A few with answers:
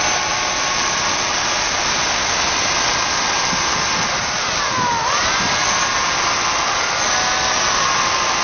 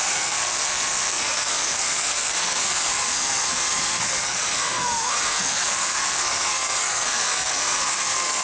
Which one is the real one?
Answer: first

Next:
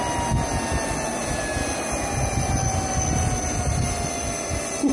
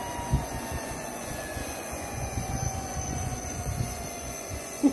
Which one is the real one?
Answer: first